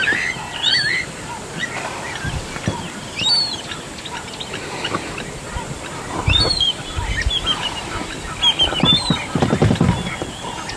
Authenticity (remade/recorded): recorded